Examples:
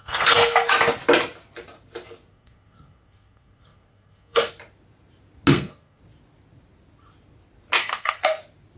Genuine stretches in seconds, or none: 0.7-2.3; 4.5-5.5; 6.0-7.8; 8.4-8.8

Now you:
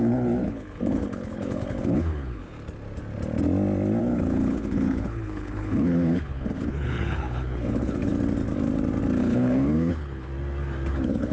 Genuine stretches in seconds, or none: 2.4-4.0; 8.1-9.2; 10.3-10.9

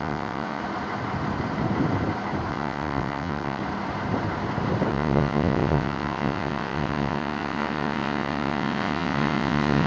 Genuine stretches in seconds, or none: 0.6-2.5; 3.6-4.9

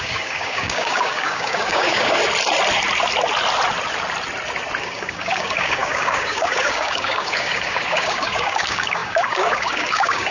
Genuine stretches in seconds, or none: 2.2-4.8

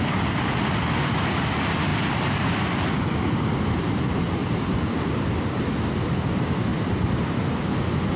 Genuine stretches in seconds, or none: 0.0-1.9; 2.5-4.4; 4.9-8.2

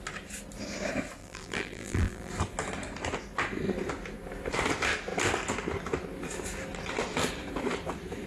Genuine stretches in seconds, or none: 0.0-1.2; 2.3-8.3